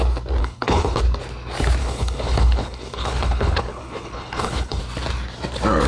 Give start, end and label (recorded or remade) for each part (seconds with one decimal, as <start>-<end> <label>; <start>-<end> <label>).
0.0-0.4 recorded; 0.4-1.0 remade; 1.0-1.8 recorded; 1.8-4.8 remade; 4.8-5.9 recorded